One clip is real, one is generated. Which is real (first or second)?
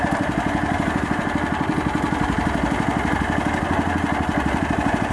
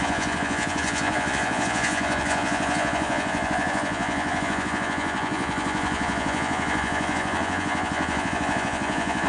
first